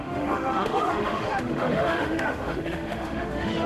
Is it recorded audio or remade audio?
remade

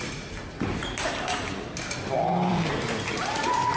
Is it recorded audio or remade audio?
remade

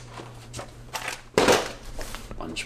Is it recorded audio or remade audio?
remade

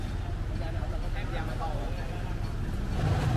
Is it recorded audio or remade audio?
recorded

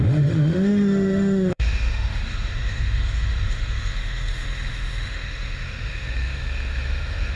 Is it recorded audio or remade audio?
remade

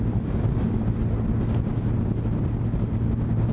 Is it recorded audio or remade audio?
recorded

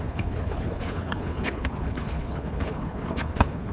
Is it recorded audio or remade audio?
remade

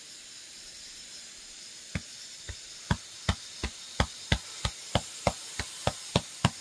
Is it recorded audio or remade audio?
recorded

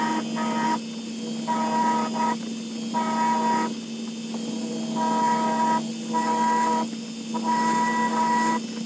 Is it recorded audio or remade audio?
recorded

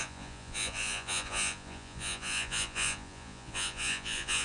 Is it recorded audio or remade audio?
remade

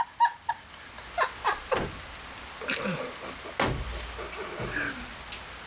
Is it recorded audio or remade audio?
recorded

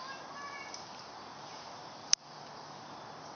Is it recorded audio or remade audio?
recorded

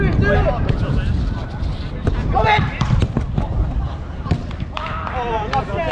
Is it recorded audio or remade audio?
recorded